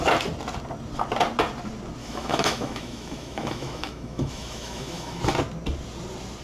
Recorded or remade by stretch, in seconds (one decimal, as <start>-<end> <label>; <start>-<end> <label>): 0.0-2.0 recorded; 2.0-5.2 remade; 5.2-6.4 recorded